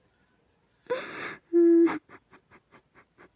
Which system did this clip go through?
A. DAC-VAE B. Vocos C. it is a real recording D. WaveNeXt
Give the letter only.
C